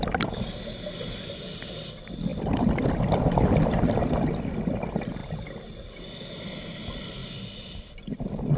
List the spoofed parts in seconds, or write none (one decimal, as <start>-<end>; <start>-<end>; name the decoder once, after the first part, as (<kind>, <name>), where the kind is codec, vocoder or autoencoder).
none

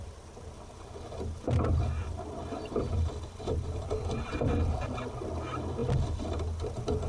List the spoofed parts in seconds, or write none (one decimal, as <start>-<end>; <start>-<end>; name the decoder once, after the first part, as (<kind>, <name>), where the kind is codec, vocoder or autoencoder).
2.0-4.5 (vocoder, BigVGAN v2)

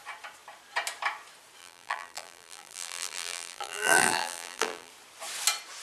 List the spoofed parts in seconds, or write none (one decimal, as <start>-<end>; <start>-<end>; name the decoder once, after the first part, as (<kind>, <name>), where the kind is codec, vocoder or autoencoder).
1.6-4.9 (vocoder, BigVGAN v2)

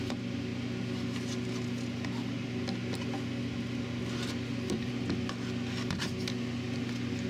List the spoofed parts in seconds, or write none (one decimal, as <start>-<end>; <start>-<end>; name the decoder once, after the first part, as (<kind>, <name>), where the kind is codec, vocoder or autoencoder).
none

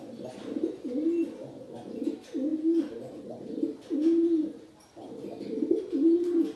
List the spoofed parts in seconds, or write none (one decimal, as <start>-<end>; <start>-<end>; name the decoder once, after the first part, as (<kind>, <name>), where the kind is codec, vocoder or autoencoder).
2.5-3.2 (vocoder, BigVGAN v2); 4.0-4.9

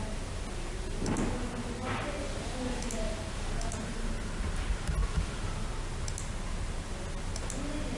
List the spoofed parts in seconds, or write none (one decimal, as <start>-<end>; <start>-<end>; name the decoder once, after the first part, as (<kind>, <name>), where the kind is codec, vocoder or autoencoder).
none